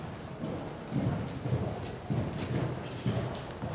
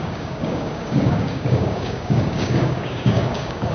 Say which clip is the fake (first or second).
second